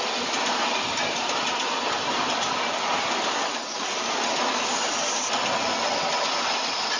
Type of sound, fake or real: real